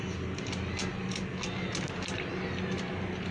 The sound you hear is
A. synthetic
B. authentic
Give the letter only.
B